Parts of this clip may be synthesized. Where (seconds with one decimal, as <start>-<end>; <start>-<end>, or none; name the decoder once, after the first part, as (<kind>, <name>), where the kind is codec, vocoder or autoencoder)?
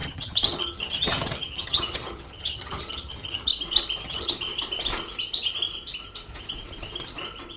0.0-3.5 (vocoder, HiFi-GAN); 4.0-4.5